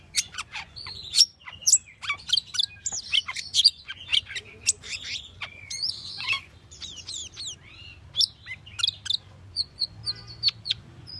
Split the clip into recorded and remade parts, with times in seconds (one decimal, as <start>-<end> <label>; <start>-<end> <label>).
0.0-1.7 remade; 1.7-3.2 recorded; 3.2-4.1 remade; 4.1-4.7 recorded; 4.7-7.2 remade; 7.2-9.2 recorded; 9.2-10.0 remade; 10.0-10.6 recorded; 10.6-11.2 remade